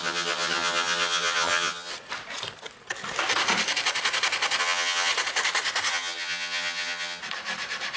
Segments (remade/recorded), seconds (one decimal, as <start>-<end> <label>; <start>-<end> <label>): 0.0-1.9 remade; 1.9-4.6 recorded; 4.6-5.1 remade; 5.1-5.9 recorded; 5.9-7.2 remade; 7.2-8.0 recorded